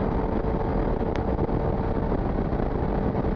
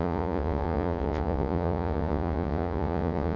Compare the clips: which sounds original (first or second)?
first